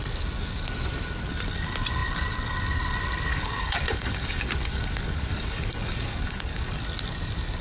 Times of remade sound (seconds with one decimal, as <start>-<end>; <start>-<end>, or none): 3.3-6.8